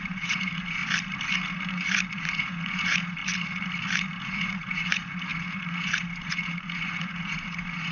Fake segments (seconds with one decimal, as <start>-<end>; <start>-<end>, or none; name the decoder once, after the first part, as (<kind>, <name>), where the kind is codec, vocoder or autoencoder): 0.0-0.8 (vocoder, Vocos); 2.1-3.2; 4.2-7.9